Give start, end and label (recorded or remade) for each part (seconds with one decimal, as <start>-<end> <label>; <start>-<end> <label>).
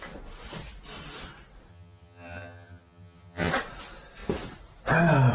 0.0-1.7 recorded; 1.7-3.5 remade; 3.5-5.3 recorded